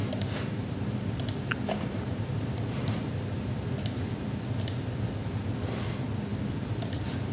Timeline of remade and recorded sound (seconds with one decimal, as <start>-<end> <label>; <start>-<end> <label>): 0.0-4.4 remade; 4.4-7.3 recorded